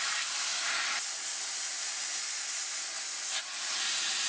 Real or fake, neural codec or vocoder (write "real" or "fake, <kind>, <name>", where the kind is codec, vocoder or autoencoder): real